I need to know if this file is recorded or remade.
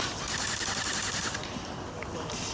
recorded